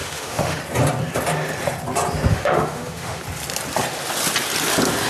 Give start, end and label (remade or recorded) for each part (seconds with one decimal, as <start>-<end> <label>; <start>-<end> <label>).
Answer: 0.0-0.6 remade; 0.6-2.3 recorded; 2.3-3.2 remade; 3.2-5.1 recorded

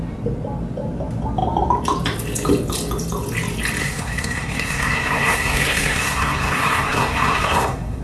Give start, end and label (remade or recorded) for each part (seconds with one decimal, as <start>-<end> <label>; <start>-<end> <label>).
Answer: 0.0-3.8 recorded; 3.8-8.0 remade

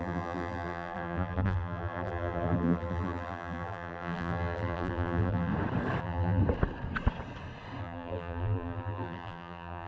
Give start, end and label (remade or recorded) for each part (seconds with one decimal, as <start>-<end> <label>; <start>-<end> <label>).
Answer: 0.0-5.5 remade; 5.5-6.0 recorded; 6.0-6.4 remade; 6.4-7.8 recorded; 7.8-9.9 remade

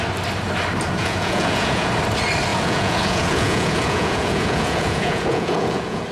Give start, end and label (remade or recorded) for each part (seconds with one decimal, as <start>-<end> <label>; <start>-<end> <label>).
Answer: 0.0-1.0 recorded; 1.0-1.9 remade; 1.9-2.5 recorded; 2.5-6.1 remade

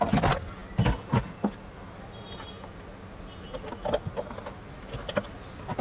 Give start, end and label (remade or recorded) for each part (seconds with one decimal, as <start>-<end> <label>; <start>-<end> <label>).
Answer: 0.0-5.8 recorded